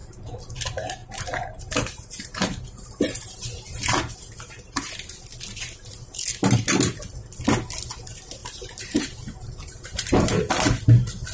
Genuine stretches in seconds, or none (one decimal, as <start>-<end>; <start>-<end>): 0.0-1.0; 4.9-8.4; 10.5-11.3